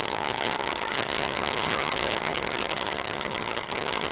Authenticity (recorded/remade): remade